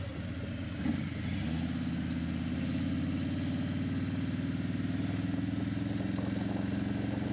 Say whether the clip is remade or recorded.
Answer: recorded